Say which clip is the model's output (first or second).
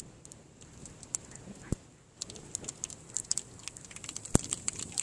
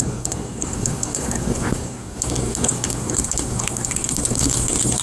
second